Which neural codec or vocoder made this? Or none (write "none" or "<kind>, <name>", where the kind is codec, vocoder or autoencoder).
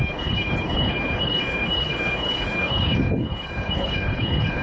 codec, HILCodec